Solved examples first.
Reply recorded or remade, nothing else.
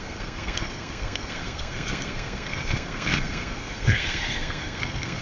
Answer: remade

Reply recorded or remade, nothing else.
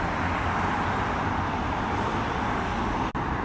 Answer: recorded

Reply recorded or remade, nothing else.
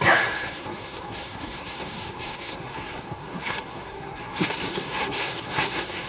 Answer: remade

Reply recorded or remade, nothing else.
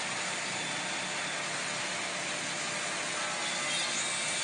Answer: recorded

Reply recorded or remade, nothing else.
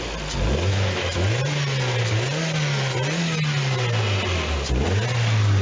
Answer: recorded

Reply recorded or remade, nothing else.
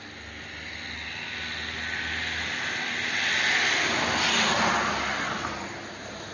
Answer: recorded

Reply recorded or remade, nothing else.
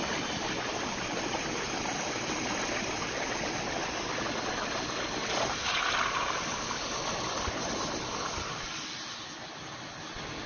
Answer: recorded